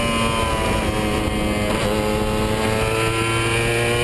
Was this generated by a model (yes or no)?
no